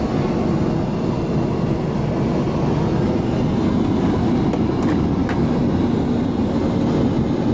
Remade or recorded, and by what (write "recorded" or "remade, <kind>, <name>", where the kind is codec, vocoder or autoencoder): recorded